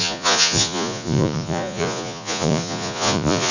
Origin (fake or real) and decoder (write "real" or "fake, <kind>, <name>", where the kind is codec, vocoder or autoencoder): fake, vocoder, Vocos